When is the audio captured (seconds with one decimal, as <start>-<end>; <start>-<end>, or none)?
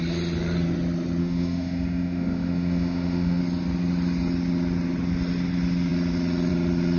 0.0-1.2; 3.4-7.0